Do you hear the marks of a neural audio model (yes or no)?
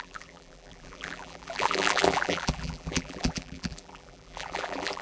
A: yes